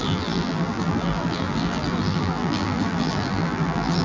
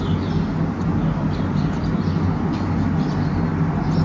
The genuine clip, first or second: second